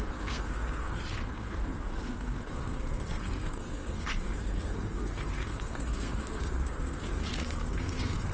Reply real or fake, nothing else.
fake